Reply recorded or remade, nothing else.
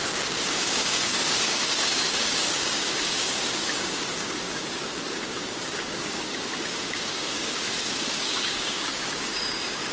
remade